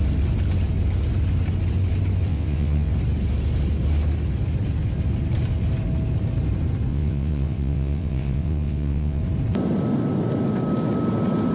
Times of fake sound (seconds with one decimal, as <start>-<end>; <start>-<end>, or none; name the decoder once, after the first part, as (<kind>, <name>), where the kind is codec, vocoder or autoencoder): 2.3-2.9 (vocoder, WaveNeXt); 6.9-9.2